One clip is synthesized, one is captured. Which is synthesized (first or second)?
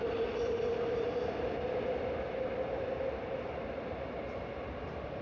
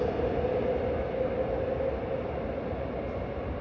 first